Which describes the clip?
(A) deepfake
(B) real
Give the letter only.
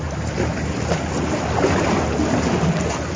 B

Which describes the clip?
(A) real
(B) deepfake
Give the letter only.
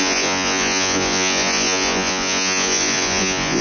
B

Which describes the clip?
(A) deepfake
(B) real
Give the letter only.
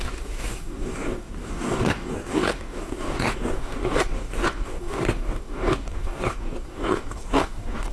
A